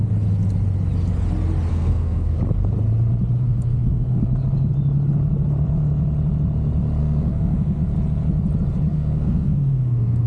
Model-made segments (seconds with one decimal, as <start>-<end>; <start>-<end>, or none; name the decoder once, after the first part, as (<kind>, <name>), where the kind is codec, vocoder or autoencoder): 1.7-2.4 (codec, SNAC); 3.4-4.2; 7.0-7.8; 8.9-10.3